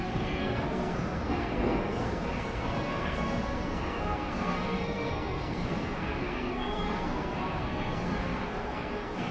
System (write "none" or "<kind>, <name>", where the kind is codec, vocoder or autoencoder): codec, SNAC